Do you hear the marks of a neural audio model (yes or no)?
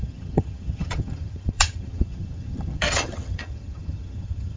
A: yes